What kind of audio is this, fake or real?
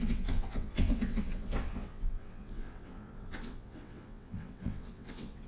fake